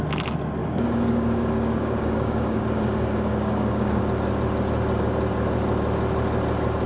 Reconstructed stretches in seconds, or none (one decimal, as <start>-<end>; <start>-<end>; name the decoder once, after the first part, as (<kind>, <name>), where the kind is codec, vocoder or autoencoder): 0.6-4.0 (codec, DAC)